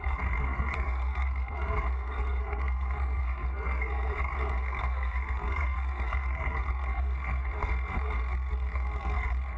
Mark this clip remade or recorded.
remade